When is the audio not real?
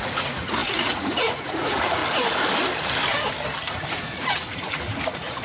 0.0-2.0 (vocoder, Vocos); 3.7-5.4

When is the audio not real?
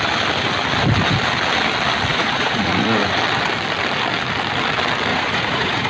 2.1-3.0 (vocoder, Vocos); 5.1-5.9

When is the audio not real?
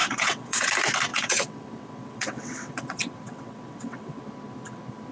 0.0-0.7 (vocoder, WaveNeXt); 1.1-4.2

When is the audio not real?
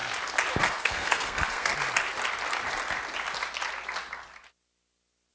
0.7-1.7 (codec, SNAC)